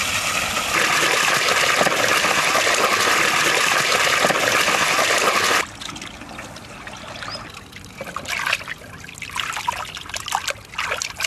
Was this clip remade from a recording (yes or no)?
no